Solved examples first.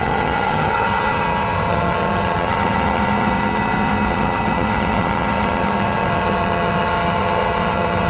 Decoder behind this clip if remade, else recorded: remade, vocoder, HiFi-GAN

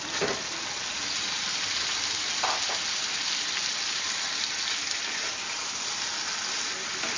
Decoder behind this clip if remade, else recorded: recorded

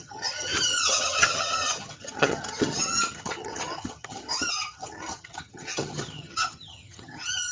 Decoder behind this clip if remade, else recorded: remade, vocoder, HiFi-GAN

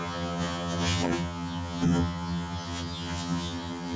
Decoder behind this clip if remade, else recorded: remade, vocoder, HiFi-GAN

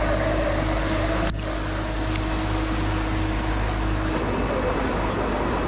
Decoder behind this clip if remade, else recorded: recorded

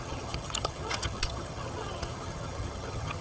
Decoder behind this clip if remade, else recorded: remade, vocoder, HiFi-GAN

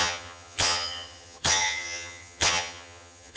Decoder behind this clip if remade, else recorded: remade, vocoder, HiFi-GAN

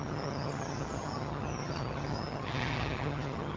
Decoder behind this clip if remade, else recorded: remade, vocoder, HiFi-GAN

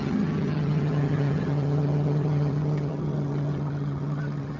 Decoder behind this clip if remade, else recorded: remade, vocoder, HiFi-GAN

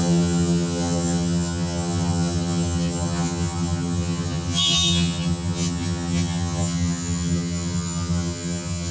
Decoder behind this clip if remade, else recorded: remade, vocoder, HiFi-GAN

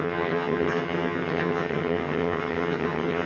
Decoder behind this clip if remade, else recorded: remade, vocoder, HiFi-GAN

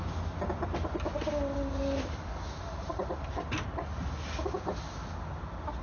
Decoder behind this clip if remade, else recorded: recorded